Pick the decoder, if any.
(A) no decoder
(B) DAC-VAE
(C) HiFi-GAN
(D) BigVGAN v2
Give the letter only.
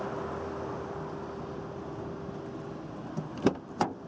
A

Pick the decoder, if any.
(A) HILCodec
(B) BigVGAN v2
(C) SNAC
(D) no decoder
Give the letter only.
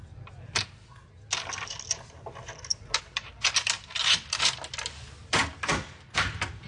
D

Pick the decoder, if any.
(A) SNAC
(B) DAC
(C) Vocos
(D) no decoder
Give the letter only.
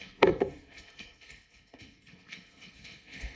A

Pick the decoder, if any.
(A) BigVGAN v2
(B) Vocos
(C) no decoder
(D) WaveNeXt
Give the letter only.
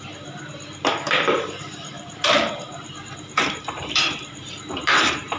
A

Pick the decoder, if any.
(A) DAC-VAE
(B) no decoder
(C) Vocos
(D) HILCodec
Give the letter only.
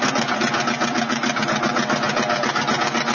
B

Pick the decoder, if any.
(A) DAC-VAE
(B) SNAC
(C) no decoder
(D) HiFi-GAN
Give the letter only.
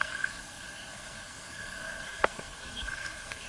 B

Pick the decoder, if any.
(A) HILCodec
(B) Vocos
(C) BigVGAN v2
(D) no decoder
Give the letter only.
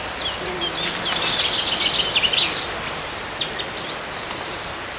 D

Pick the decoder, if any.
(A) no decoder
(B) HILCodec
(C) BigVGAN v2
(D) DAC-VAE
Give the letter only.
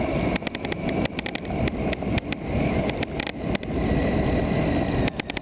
A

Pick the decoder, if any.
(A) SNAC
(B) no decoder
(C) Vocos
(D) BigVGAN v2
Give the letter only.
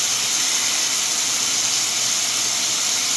B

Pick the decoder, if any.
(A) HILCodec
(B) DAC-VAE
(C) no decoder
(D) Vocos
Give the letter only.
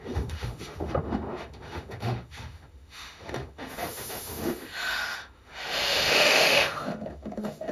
B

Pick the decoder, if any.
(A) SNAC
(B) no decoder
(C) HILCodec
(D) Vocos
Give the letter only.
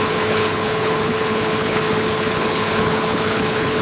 C